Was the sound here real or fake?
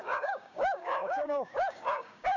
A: fake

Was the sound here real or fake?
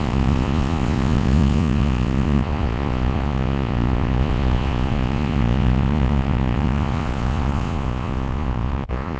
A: fake